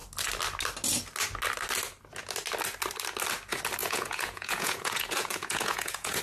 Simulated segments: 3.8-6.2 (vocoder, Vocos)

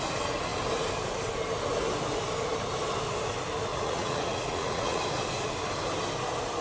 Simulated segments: 3.7-5.0 (vocoder, Vocos)

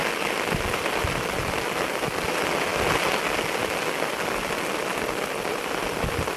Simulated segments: none

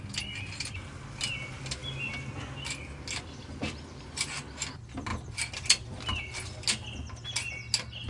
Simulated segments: 3.6-4.3 (vocoder, BigVGAN v2)